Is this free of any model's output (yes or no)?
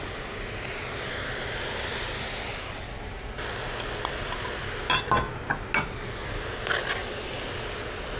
yes